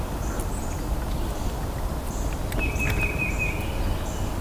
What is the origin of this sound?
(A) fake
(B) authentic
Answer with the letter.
B